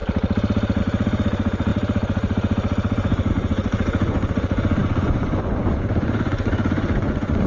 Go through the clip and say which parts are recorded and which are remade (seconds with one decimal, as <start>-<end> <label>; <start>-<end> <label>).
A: 0.0-0.8 recorded; 0.8-7.5 remade